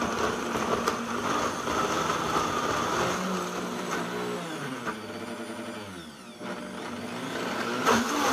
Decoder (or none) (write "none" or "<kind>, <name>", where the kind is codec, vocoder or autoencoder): none